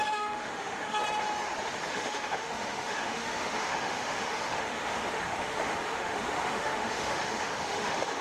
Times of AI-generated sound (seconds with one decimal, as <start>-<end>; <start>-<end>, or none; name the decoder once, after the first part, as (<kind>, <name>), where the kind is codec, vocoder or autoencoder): 0.0-1.0 (autoencoder, DAC-VAE); 1.9-8.2